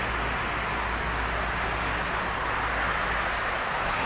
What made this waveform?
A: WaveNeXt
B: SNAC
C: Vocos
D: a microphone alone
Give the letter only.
D